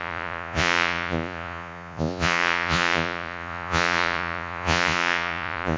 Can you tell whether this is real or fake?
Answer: fake